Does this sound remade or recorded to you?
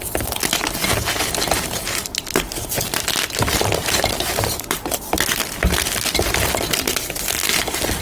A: recorded